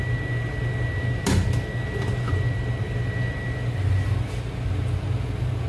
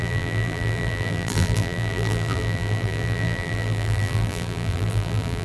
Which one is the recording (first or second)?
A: first